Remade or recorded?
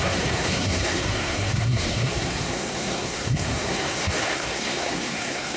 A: remade